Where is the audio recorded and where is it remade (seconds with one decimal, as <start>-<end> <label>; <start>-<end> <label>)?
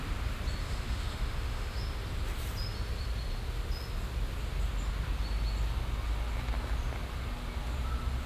0.0-0.6 recorded; 0.6-1.8 remade; 1.8-8.3 recorded